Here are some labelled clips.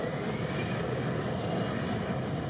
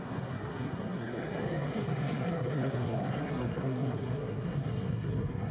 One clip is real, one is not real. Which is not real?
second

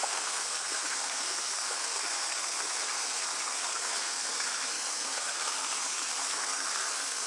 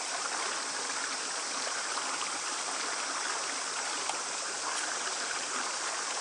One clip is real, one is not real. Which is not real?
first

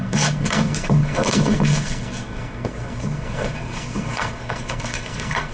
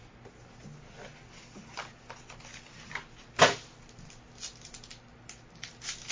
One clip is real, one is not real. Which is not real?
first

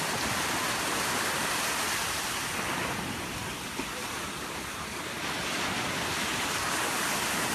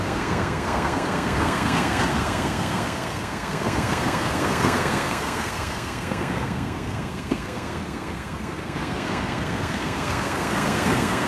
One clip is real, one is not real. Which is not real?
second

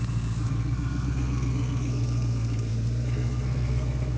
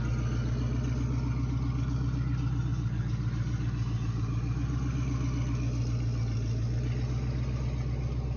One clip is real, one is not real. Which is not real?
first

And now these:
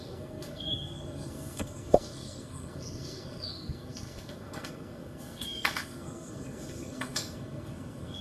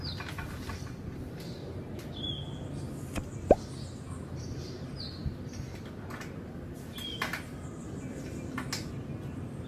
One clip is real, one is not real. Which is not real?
first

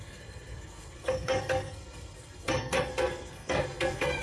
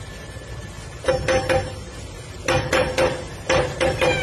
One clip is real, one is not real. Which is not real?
first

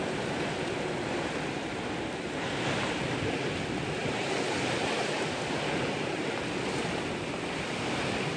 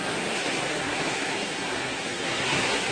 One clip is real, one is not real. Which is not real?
second